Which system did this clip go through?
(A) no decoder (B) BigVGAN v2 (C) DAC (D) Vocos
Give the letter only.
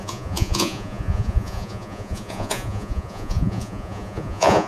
D